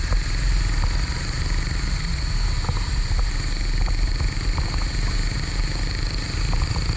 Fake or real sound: real